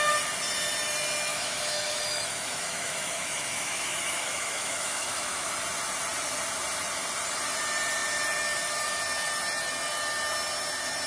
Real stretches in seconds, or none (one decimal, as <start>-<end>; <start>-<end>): 0.0-1.3; 5.5-11.1